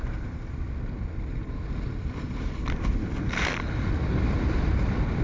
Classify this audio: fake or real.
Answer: real